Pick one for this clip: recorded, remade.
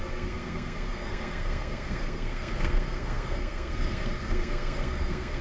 remade